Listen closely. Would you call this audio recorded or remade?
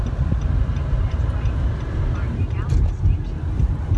recorded